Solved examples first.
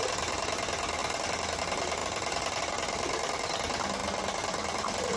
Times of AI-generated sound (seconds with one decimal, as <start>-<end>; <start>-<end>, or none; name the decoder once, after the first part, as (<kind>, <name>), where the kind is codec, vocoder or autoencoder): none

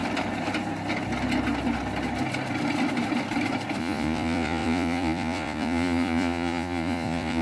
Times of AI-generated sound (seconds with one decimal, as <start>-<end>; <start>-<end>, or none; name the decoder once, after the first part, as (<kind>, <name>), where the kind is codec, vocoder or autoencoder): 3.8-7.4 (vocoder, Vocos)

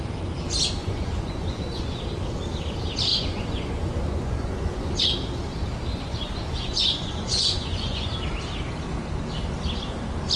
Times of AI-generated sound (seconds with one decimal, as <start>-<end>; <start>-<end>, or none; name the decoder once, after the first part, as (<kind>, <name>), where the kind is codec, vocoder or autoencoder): 0.8-2.0 (vocoder, Vocos); 3.1-5.0; 5.9-8.1

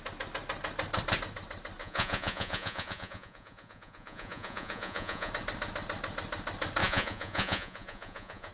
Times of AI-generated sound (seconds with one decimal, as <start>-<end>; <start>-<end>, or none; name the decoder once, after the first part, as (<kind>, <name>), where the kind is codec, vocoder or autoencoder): 1.8-5.3 (vocoder, Vocos); 6.8-8.5

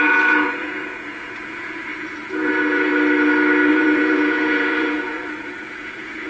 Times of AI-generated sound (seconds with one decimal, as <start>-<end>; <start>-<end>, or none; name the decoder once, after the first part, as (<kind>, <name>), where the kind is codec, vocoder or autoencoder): 0.0-2.9 (vocoder, Vocos); 3.7-6.3

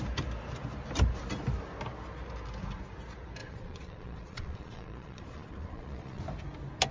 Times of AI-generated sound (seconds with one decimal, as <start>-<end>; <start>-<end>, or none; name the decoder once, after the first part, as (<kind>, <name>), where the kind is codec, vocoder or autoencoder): 3.4-6.2 (vocoder, Vocos)